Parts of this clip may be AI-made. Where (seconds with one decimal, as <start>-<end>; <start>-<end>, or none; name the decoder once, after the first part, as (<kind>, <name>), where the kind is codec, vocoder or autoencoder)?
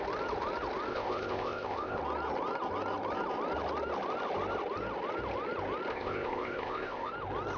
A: 0.9-2.0 (codec, ZipCodec); 5.9-7.1